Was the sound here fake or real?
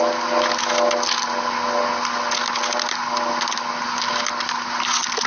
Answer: real